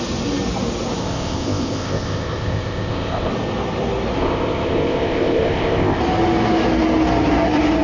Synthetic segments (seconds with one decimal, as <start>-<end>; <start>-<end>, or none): 1.0-3.3; 4.2-6.0

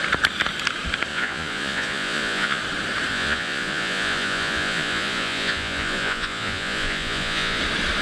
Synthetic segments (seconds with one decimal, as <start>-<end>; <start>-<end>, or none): 1.1-2.6; 3.1-7.6

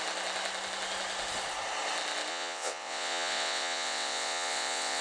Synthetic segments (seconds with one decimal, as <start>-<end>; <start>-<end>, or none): 2.3-5.0

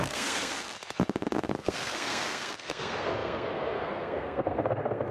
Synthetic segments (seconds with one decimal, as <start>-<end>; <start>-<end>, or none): 0.0-5.1

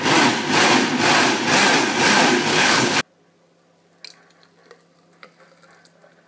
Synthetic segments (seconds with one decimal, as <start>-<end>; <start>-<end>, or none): 2.5-3.0

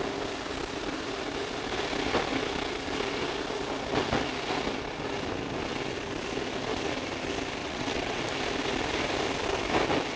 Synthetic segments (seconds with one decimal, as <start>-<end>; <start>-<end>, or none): 7.6-8.2

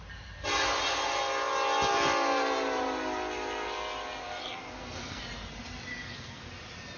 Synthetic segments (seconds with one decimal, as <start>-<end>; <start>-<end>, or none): 4.2-5.2; 5.9-6.5